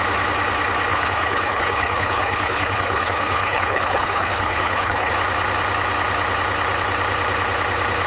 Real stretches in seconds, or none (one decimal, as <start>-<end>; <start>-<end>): 0.0-0.9; 5.1-8.1